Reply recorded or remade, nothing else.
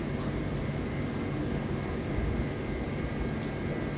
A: recorded